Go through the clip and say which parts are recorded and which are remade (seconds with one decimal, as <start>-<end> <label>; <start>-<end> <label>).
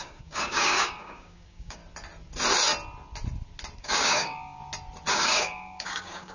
0.0-1.8 remade; 1.8-3.8 recorded; 3.8-4.6 remade; 4.6-5.1 recorded; 5.1-6.3 remade